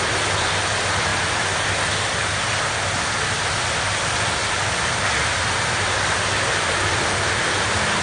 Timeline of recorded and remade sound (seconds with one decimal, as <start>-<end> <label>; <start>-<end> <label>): 0.0-8.0 recorded